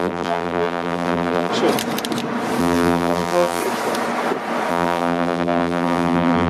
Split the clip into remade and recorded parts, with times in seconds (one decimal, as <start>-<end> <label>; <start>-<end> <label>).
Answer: 0.0-1.5 remade; 1.5-2.6 recorded; 2.6-3.6 remade; 3.6-4.7 recorded; 4.7-6.5 remade

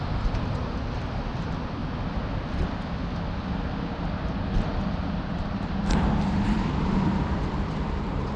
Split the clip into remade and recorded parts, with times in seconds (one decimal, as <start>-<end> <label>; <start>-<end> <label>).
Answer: 0.0-1.8 remade; 1.8-5.5 recorded; 5.5-8.4 remade